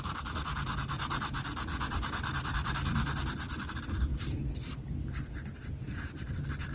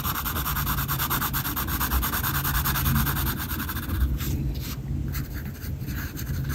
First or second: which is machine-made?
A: first